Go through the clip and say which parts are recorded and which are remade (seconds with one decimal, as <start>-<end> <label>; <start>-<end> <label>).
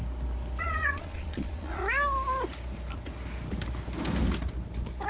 0.0-0.6 recorded; 0.6-1.8 remade; 1.8-5.1 recorded